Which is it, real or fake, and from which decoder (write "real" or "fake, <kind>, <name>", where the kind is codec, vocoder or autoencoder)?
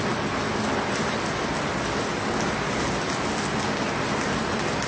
real